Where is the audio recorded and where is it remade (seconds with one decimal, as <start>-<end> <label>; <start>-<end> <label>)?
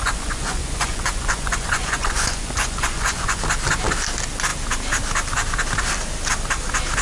0.0-3.4 remade; 3.4-7.0 recorded